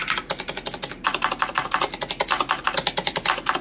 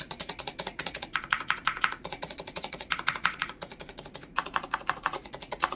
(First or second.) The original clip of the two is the first